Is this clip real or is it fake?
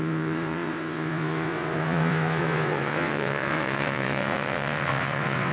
fake